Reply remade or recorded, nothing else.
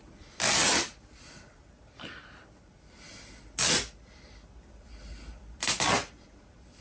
recorded